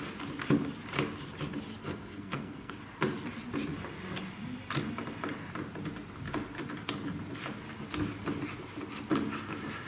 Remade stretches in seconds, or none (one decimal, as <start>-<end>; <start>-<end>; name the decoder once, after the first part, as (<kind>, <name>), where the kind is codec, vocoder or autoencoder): 1.8-2.7 (codec, SNAC)